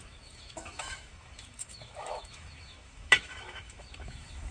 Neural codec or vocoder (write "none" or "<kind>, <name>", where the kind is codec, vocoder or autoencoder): autoencoder, DAC-VAE